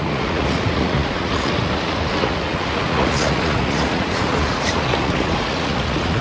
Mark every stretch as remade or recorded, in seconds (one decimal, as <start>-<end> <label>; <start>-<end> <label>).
0.0-6.2 remade